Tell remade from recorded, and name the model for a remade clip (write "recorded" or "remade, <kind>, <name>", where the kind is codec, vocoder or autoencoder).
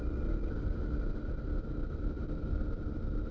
recorded